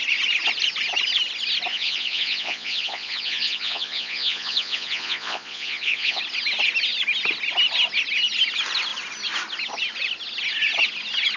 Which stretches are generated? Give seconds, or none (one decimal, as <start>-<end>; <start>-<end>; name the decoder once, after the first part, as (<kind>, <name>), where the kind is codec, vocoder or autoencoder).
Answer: 1.7-6.2 (vocoder, Vocos)